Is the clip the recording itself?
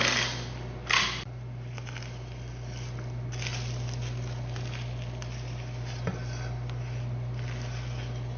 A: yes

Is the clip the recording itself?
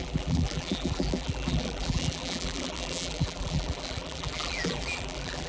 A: no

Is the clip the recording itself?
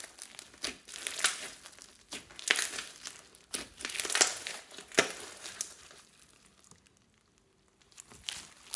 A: yes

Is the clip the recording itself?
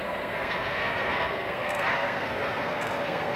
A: no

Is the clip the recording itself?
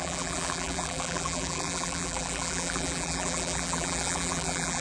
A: no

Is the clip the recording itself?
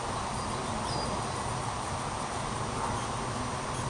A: yes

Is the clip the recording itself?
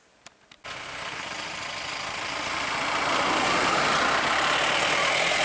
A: yes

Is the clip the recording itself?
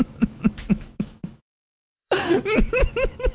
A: no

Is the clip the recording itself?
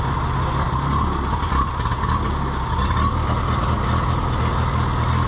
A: yes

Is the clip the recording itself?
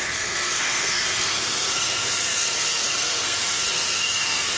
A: no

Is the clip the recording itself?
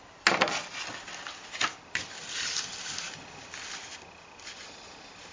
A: yes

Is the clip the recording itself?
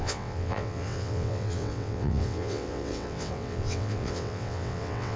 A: no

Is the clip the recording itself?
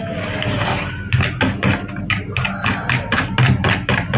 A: yes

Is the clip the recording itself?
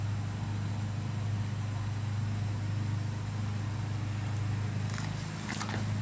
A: yes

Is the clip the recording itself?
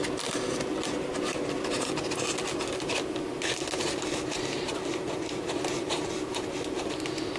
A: yes